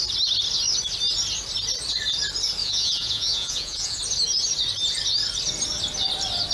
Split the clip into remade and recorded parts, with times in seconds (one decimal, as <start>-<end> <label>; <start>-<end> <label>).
0.0-2.6 recorded; 2.6-4.0 remade; 4.0-6.5 recorded